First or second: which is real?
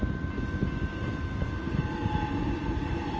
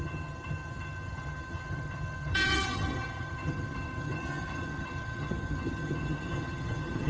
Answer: first